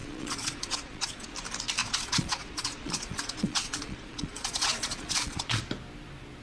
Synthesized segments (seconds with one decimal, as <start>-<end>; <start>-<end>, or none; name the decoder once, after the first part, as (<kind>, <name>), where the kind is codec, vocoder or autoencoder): 0.0-1.3 (vocoder, Vocos); 1.8-5.6